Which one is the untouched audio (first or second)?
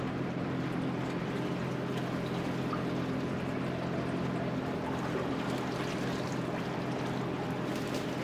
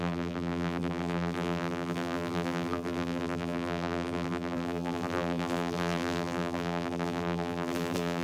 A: first